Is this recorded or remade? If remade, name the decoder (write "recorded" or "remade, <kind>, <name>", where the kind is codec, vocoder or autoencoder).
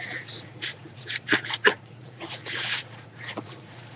remade, vocoder, Vocos